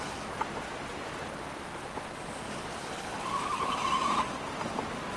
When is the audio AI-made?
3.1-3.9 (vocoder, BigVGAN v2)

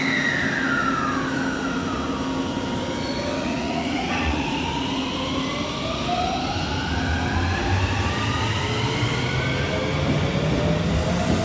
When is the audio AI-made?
3.4-4.7 (vocoder, Vocos)

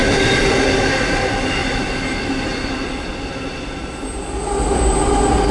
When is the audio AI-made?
1.6-2.4 (vocoder, BigVGAN v2)

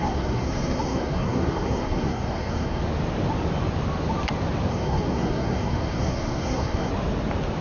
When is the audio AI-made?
0.0-2.8 (codec, SNAC); 4.7-6.9

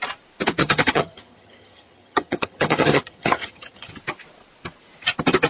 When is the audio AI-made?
0.6-3.9 (vocoder, HiFi-GAN)

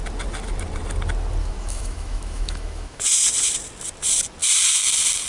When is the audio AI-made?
1.4-3.0 (autoencoder, DAC-VAE)

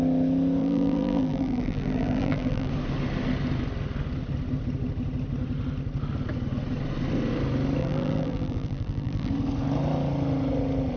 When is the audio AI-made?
0.6-2.7 (vocoder, BigVGAN v2); 7.8-9.3